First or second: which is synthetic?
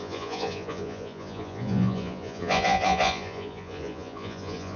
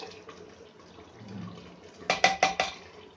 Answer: first